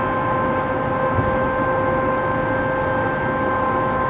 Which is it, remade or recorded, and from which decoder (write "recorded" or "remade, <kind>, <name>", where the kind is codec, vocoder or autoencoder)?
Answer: recorded